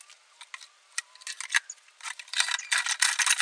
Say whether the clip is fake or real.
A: real